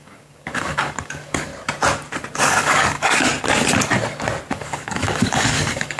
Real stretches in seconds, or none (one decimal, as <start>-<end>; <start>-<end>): 1.5-2.3; 3.3-4.5